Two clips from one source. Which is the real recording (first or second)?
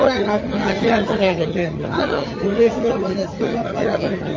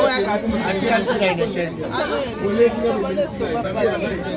second